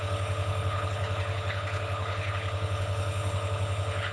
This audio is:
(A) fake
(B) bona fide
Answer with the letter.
A